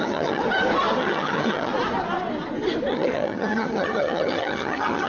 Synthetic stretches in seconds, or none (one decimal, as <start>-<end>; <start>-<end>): 0.0-0.4; 1.0-1.7; 2.9-5.1